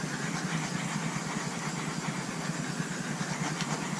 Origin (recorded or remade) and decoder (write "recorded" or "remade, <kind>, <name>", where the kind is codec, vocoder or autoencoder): recorded